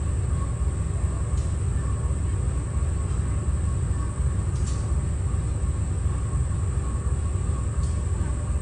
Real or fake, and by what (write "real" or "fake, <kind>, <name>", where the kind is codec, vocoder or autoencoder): real